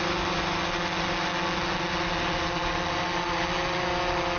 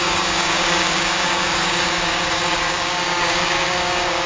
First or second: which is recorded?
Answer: first